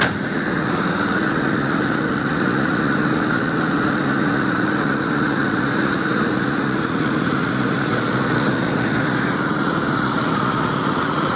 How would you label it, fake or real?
fake